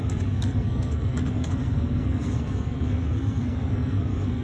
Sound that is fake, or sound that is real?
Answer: fake